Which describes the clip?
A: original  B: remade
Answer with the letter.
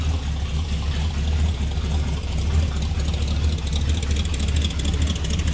A